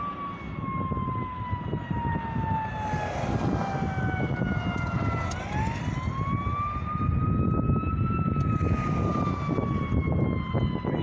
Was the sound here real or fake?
real